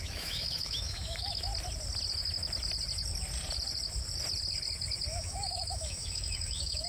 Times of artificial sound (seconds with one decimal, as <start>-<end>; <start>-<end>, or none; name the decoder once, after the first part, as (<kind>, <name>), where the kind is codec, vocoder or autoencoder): 0.0-1.5 (autoencoder, DAC-VAE); 5.1-6.9